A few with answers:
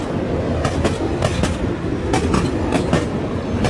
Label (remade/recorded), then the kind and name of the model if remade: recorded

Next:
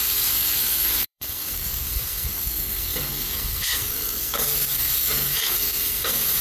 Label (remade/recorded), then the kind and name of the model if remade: remade, codec, SNAC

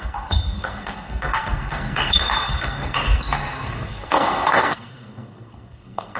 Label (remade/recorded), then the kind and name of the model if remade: remade, codec, SNAC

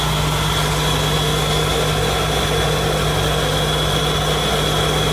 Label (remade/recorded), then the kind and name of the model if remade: recorded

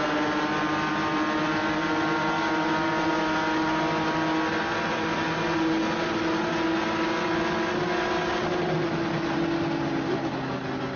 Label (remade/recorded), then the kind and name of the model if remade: recorded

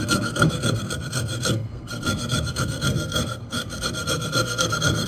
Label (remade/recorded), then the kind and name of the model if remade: remade, codec, SNAC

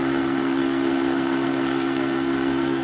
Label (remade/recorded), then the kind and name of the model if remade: remade, codec, SNAC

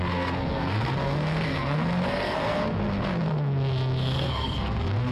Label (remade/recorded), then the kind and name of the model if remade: remade, codec, SNAC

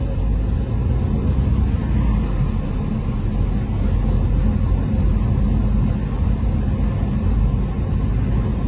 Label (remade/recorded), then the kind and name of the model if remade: recorded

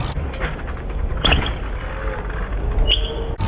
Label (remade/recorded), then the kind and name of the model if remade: recorded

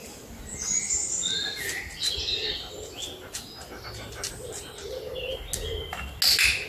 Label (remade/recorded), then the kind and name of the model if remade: recorded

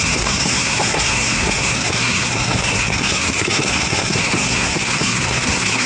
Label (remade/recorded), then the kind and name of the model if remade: remade, codec, SNAC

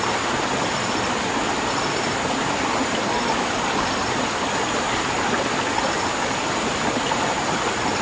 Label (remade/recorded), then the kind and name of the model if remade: recorded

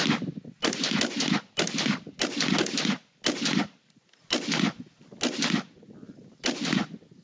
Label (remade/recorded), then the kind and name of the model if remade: recorded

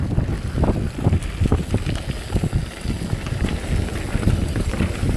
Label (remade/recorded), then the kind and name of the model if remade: recorded